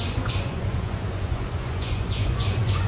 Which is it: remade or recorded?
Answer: remade